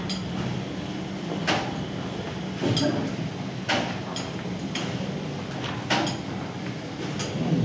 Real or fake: real